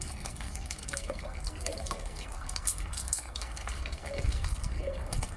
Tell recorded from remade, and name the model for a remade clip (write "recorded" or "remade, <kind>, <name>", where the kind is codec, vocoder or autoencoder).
remade, codec, SNAC